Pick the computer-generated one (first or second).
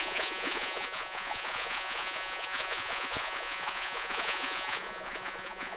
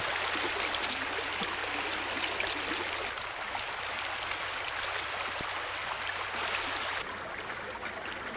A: first